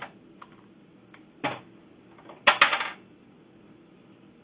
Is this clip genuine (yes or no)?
yes